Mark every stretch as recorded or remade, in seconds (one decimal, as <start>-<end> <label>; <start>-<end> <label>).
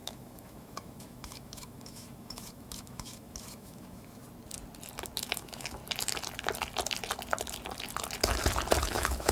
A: 0.0-4.2 remade; 4.2-5.2 recorded; 5.2-5.8 remade; 5.8-8.8 recorded; 8.8-9.3 remade